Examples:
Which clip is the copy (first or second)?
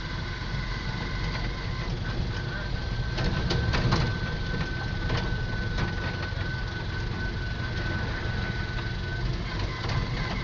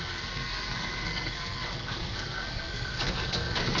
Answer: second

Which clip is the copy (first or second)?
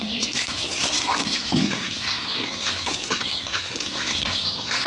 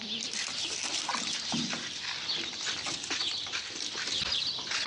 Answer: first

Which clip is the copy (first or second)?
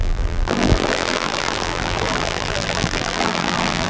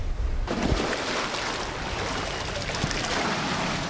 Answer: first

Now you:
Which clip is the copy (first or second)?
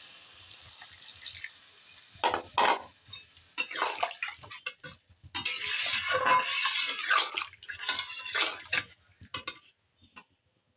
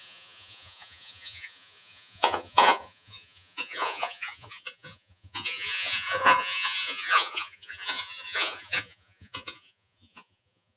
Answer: second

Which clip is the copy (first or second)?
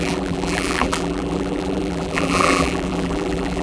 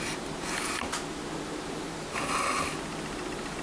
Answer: first